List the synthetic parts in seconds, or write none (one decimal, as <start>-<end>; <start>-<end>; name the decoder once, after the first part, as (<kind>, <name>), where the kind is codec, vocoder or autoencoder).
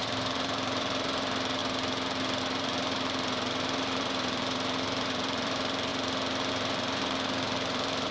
0.0-1.6 (vocoder, BigVGAN v2); 2.4-5.9; 6.5-8.1